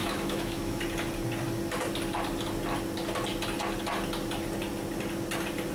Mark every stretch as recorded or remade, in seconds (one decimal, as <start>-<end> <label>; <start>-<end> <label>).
0.0-0.8 remade; 0.8-5.7 recorded